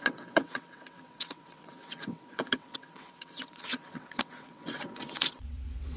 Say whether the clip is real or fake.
fake